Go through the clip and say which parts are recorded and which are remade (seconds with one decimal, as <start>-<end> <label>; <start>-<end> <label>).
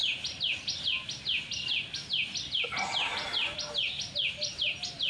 0.0-5.1 recorded